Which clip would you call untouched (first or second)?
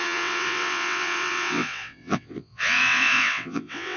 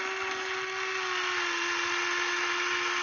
second